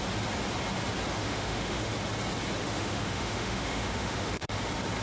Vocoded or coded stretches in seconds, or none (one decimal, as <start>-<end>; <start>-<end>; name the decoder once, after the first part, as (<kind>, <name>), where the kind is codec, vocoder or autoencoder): 1.2-1.9 (autoencoder, DAC-VAE); 2.6-4.6